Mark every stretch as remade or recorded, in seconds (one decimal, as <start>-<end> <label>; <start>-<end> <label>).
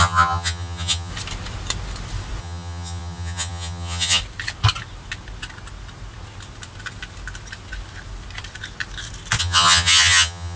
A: 0.0-1.1 remade; 1.1-2.4 recorded; 2.4-4.2 remade; 4.2-9.4 recorded; 9.4-10.6 remade